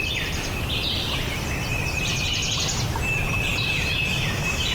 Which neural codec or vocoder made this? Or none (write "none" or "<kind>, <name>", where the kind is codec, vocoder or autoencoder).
none